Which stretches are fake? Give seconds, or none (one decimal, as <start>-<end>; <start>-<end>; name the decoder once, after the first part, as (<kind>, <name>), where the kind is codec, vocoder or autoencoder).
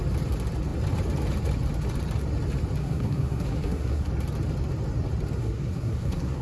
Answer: 2.8-4.1 (codec, SNAC); 5.4-6.4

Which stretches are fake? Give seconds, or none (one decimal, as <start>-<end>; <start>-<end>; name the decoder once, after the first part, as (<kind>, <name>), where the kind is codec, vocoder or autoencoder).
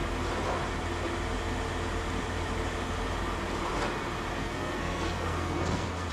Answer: 4.4-6.1 (codec, SNAC)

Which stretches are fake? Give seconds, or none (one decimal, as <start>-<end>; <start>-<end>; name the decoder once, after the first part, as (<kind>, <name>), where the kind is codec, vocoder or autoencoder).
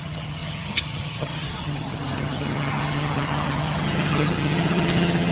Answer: 0.0-5.3 (vocoder, HiFi-GAN)